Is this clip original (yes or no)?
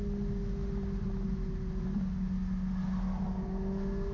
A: yes